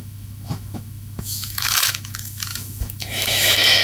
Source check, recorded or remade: remade